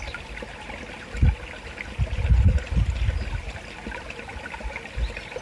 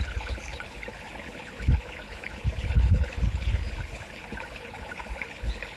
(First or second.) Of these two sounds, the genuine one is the first